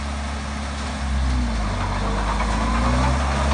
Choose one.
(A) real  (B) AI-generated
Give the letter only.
A